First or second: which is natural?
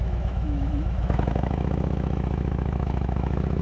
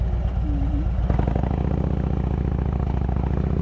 second